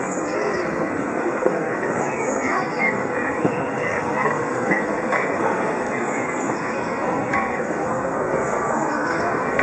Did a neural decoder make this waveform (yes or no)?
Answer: yes